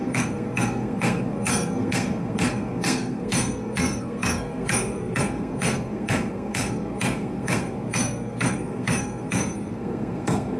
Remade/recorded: remade